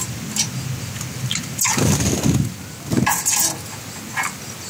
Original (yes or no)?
yes